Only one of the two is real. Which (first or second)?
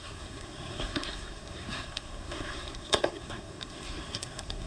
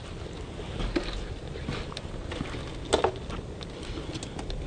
second